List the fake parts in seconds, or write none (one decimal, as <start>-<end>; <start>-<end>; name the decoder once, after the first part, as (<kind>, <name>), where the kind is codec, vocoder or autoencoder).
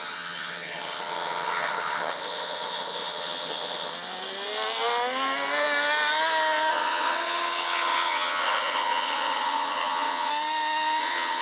0.0-3.9 (vocoder, HiFi-GAN); 6.7-10.3; 11.0-11.4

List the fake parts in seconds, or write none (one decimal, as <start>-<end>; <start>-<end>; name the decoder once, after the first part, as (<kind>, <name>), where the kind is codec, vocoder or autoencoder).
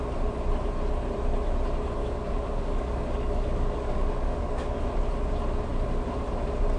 2.0-4.8 (codec, DAC)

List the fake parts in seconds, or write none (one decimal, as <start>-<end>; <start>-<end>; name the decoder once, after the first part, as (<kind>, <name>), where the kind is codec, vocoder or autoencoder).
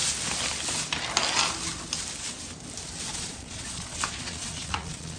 3.1-5.2 (vocoder, Vocos)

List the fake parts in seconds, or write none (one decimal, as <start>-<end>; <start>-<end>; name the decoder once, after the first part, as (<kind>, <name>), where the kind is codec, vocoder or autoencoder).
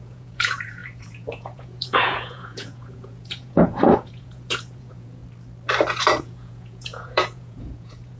0.0-5.2 (vocoder, Vocos); 6.2-8.2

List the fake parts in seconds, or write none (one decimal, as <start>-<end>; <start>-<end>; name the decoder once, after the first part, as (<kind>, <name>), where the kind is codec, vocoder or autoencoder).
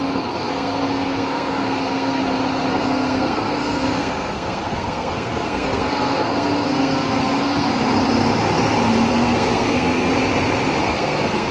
0.0-2.2 (codec, SNAC); 2.7-7.7; 9.1-10.1; 10.8-11.5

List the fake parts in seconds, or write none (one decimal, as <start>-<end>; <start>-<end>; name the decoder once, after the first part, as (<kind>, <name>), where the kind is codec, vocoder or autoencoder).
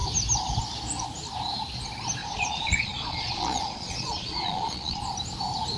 2.2-5.0 (vocoder, Vocos)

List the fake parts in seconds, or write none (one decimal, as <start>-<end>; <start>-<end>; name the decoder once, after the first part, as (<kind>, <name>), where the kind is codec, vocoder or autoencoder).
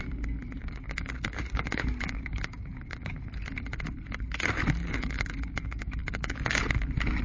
0.6-3.1 (codec, DAC); 4.8-6.6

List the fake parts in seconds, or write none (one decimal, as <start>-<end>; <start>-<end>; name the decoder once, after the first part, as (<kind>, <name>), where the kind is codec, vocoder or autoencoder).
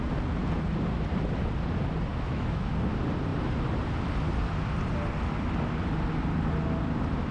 2.1-2.7 (autoencoder, DAC-VAE)